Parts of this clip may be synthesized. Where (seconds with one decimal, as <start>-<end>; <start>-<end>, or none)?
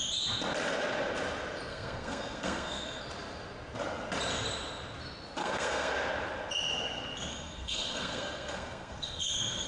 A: 1.7-3.0; 5.4-5.9; 7.3-9.7